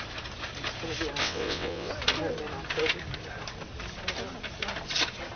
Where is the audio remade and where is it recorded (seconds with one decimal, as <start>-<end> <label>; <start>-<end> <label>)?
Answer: 0.0-1.2 recorded; 1.2-1.9 remade; 1.9-5.4 recorded

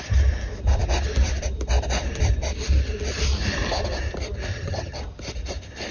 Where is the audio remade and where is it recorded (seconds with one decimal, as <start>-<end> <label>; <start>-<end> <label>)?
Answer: 0.0-4.5 recorded; 4.5-5.0 remade; 5.0-5.9 recorded

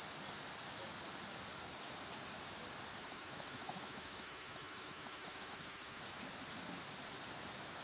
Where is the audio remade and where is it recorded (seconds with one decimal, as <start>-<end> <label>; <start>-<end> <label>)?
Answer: 0.0-3.0 recorded; 3.0-6.0 remade; 6.0-7.8 recorded

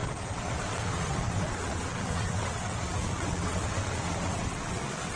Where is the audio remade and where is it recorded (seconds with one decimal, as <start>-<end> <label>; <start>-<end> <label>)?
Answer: 0.0-5.2 remade

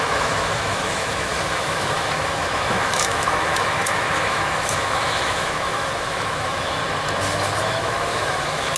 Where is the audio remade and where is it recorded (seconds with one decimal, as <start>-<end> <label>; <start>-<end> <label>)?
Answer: 0.0-6.8 remade; 6.8-7.6 recorded; 7.6-8.8 remade

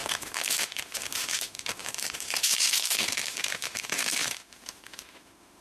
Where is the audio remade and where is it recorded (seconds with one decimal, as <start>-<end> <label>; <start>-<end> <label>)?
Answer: 0.0-5.6 remade

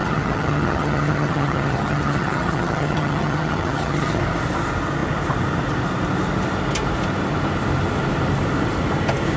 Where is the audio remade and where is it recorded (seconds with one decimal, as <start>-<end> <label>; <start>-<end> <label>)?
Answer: 0.0-4.2 remade; 4.2-9.4 recorded